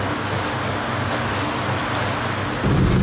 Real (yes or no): yes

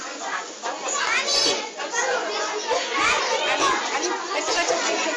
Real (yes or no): no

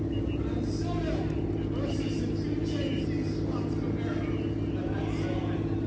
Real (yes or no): yes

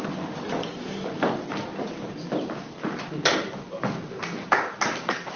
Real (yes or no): yes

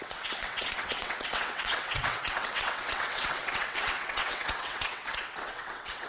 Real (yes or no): no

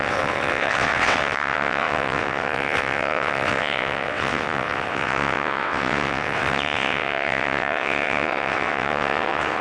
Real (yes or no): no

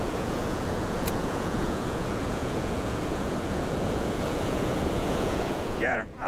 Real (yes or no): no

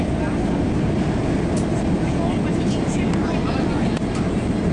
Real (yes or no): yes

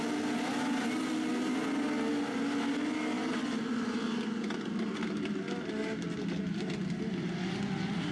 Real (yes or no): yes